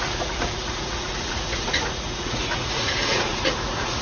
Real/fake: fake